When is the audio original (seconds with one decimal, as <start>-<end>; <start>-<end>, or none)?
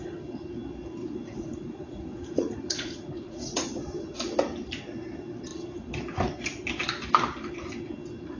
0.0-1.0; 3.8-8.4